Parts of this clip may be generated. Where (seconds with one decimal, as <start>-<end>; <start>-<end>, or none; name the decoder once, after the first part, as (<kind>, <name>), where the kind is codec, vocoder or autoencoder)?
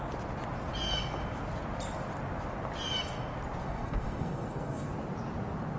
3.6-4.9 (codec, SNAC)